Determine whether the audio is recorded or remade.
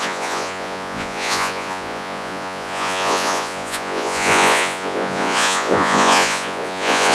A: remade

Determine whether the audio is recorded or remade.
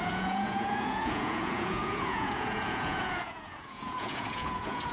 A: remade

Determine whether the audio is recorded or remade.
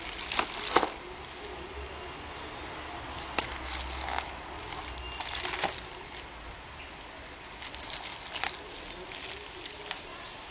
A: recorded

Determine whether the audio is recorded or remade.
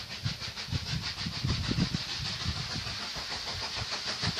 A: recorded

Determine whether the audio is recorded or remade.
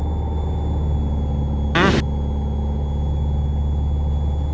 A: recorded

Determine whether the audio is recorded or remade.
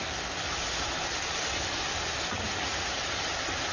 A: recorded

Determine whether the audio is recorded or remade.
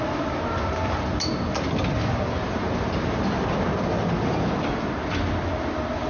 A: recorded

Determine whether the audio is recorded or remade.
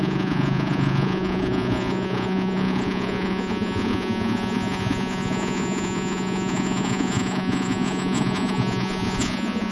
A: remade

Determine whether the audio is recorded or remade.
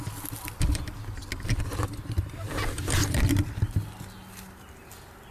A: recorded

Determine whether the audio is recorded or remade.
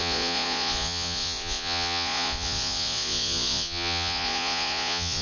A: remade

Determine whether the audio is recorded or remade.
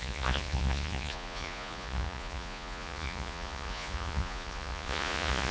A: remade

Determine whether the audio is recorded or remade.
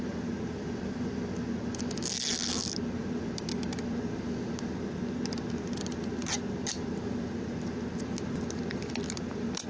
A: recorded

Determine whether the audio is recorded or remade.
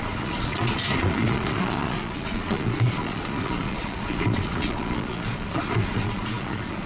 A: remade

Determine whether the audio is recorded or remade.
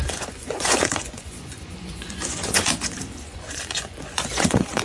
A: remade